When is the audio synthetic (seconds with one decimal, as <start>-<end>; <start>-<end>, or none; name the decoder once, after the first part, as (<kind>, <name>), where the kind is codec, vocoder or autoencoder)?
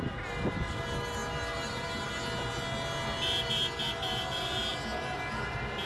none